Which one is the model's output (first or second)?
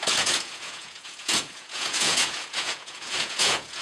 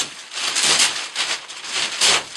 first